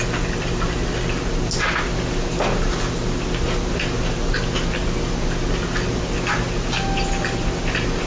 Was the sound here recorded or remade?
recorded